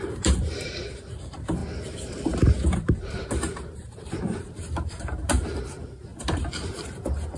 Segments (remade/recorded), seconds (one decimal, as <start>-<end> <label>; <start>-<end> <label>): 0.0-7.4 remade